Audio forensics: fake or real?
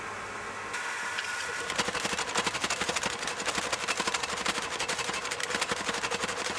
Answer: real